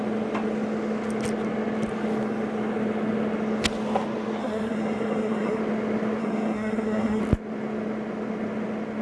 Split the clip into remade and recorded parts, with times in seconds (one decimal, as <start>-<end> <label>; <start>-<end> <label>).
0.0-4.4 recorded; 4.4-5.6 remade; 5.6-6.2 recorded; 6.2-7.2 remade; 7.2-9.0 recorded